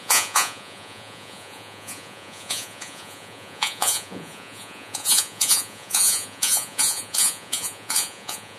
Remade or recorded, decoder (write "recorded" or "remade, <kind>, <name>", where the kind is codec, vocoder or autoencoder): remade, vocoder, Vocos